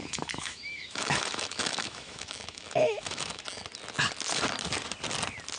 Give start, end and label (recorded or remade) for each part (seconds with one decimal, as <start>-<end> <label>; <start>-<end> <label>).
0.0-3.4 remade; 3.4-5.6 recorded